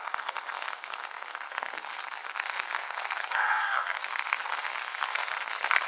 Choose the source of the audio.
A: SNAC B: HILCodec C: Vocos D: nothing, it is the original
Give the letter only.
A